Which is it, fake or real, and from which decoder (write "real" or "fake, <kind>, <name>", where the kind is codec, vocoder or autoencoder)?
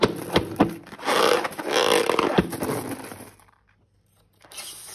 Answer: real